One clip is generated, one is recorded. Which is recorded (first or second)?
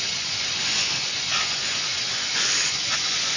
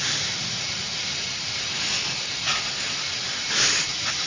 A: second